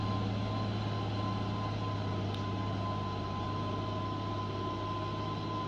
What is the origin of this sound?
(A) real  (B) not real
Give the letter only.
A